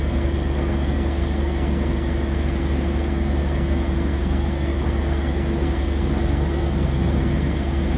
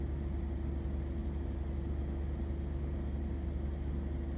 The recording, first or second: second